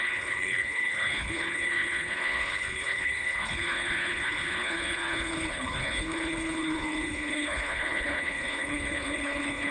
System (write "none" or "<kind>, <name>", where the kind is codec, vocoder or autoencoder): codec, HILCodec